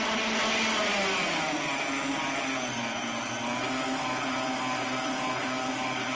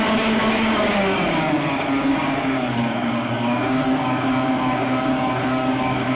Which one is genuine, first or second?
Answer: first